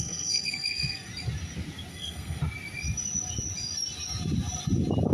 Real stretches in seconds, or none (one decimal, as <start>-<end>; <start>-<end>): 1.1-1.9; 2.4-5.1